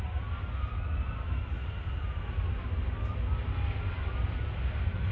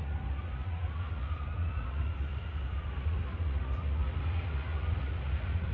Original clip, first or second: first